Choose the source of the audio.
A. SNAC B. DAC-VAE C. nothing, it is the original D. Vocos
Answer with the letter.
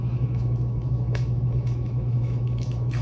B